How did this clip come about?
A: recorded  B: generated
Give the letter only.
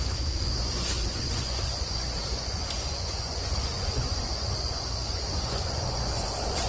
B